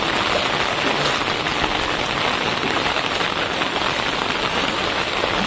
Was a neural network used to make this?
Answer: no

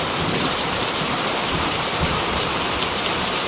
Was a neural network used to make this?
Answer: yes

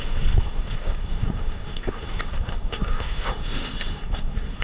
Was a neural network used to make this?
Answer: yes